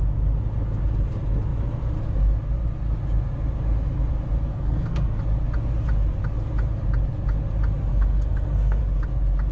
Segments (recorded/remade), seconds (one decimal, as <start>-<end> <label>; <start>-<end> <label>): 0.0-4.5 recorded; 4.5-5.2 remade; 5.2-7.9 recorded; 7.9-8.8 remade; 8.8-9.5 recorded